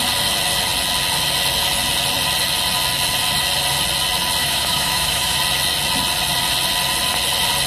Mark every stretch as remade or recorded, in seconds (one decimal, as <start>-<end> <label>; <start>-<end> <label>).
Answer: 0.0-4.4 recorded; 4.4-5.4 remade; 5.4-7.7 recorded